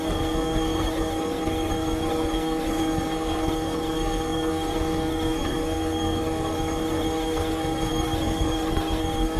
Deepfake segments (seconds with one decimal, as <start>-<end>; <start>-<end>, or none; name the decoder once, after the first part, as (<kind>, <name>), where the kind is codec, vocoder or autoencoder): 0.0-9.4 (codec, SNAC)